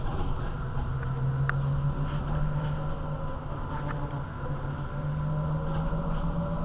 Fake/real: real